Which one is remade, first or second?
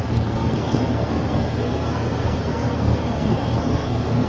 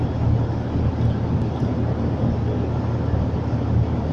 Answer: first